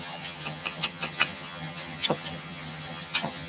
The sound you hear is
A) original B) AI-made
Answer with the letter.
B